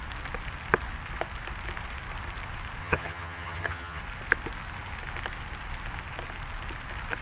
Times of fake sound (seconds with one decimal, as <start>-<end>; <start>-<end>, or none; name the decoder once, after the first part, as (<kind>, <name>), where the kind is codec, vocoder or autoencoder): 2.8-4.0 (vocoder, HiFi-GAN)